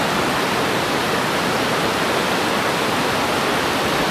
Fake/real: real